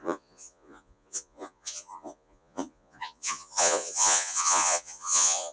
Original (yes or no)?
no